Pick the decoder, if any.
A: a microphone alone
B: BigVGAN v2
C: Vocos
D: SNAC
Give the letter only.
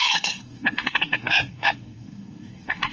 D